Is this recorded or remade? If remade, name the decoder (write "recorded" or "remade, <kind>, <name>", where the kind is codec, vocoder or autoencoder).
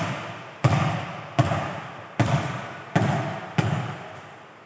recorded